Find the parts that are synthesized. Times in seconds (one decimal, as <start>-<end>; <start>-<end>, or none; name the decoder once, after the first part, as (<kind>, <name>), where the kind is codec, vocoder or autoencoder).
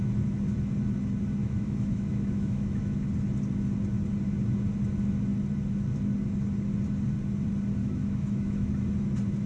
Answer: 1.4-3.1 (autoencoder, DAC-VAE); 7.8-8.7